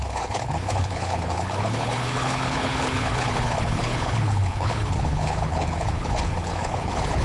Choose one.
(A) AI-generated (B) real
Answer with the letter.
A